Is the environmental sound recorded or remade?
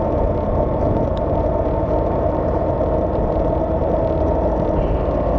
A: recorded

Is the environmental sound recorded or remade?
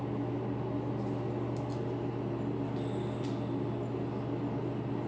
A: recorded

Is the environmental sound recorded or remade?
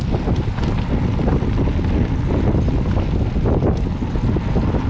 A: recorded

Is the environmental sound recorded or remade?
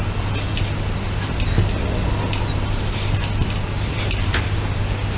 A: recorded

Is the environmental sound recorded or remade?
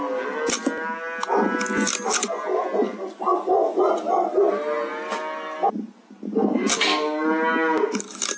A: recorded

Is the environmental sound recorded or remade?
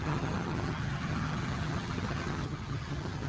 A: remade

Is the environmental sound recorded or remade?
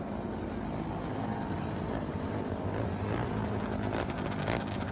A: recorded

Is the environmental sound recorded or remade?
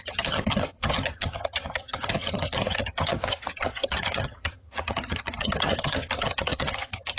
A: remade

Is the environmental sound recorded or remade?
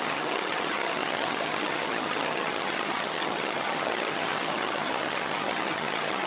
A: remade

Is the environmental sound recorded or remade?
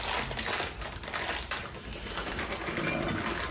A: recorded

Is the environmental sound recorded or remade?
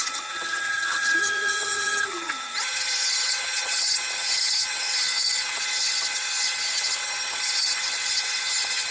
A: remade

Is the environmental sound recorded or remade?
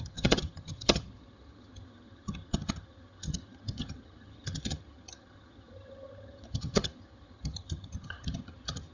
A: remade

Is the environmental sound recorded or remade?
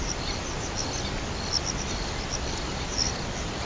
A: recorded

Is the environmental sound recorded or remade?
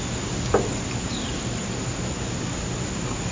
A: recorded